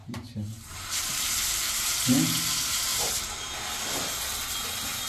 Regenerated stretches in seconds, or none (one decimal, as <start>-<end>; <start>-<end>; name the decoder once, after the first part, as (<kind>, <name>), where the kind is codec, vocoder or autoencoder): 0.0-1.7 (vocoder, BigVGAN v2); 2.9-3.4

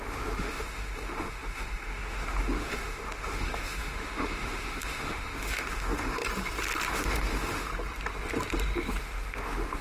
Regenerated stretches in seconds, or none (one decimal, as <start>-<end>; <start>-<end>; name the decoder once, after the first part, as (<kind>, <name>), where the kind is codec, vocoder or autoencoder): 0.0-6.2 (autoencoder, DAC-VAE); 6.9-7.7; 9.0-9.8

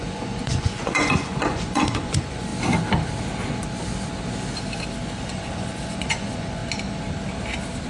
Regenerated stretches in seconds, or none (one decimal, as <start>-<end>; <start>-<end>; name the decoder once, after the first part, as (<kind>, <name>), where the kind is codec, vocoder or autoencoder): 0.0-2.5 (vocoder, Vocos); 5.2-6.6